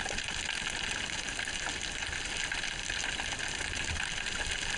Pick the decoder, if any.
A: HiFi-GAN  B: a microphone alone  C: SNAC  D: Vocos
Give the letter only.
B